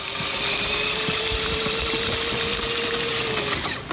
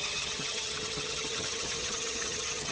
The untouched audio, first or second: first